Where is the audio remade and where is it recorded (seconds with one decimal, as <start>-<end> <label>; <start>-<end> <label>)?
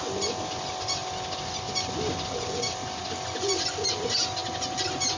0.0-5.2 recorded